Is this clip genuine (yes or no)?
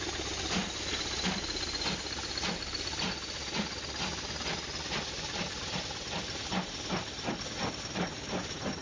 yes